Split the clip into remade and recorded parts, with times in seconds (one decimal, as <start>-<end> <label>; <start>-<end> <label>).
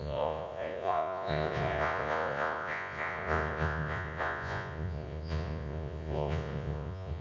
0.0-7.2 remade